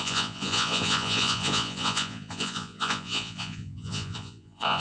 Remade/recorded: remade